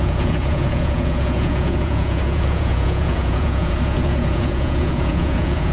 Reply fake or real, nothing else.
fake